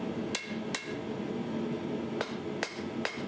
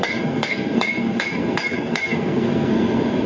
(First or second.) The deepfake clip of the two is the second